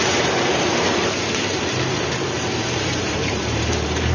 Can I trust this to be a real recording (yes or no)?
no